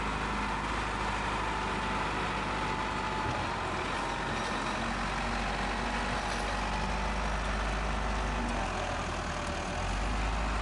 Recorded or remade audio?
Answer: recorded